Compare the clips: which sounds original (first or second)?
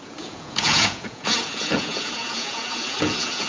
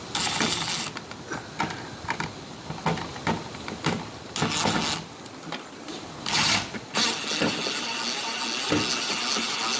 second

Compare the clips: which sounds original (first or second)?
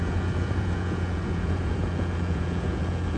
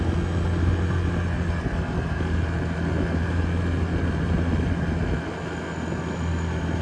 second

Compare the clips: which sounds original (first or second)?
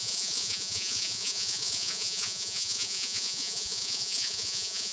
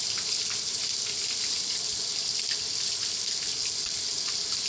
second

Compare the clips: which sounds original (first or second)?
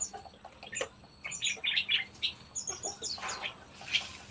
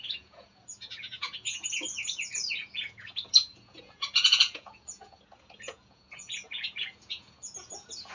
first